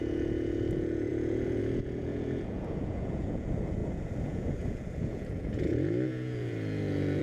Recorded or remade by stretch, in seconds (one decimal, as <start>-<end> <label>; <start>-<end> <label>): 0.0-7.2 remade